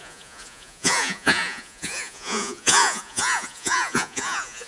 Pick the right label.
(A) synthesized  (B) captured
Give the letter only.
A